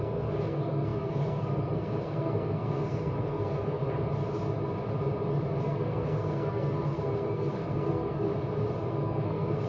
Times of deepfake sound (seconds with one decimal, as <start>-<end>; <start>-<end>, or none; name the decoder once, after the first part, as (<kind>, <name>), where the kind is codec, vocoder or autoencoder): 0.0-3.8 (codec, SNAC); 5.6-8.3; 8.9-9.7